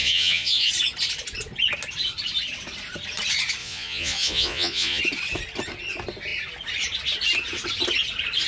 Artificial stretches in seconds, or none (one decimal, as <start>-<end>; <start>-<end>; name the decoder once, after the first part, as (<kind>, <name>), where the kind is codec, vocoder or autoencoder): 0.0-0.7 (vocoder, Vocos); 3.6-5.0